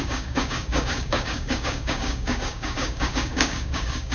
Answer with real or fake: fake